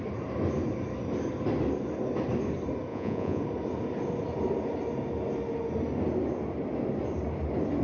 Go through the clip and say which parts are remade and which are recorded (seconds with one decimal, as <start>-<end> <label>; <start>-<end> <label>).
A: 0.0-2.9 recorded; 2.9-3.4 remade; 3.4-7.8 recorded